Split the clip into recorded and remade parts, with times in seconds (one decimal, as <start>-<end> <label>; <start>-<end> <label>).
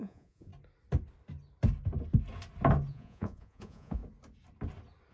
0.0-0.5 remade; 0.5-2.9 recorded; 2.9-4.0 remade; 4.0-5.1 recorded